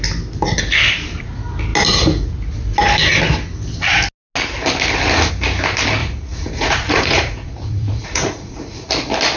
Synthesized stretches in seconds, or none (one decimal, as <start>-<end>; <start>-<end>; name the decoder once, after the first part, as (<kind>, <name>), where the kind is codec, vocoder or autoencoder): 6.0-8.9 (vocoder, Vocos)